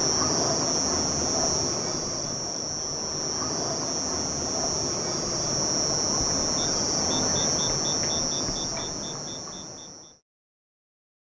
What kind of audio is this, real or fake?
real